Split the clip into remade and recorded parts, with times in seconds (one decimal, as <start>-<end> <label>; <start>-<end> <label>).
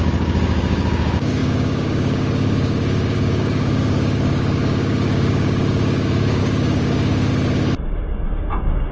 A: 0.0-7.3 remade; 7.3-8.1 recorded; 8.1-8.9 remade